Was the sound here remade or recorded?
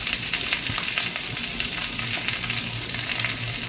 recorded